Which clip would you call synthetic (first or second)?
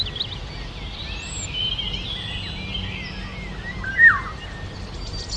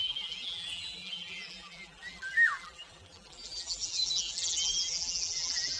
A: second